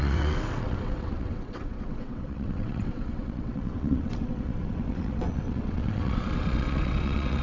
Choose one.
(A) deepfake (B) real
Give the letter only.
A